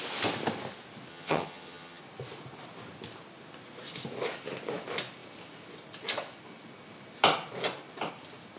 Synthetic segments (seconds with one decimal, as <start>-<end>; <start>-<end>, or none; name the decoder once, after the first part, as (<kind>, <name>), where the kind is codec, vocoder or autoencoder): 1.1-2.0 (vocoder, HiFi-GAN)